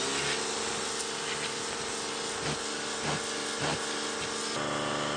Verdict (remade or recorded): recorded